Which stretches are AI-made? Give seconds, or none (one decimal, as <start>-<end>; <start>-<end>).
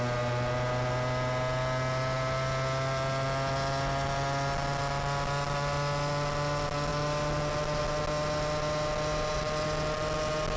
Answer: none